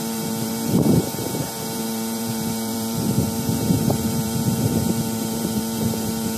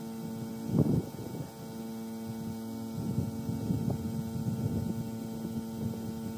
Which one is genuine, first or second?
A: second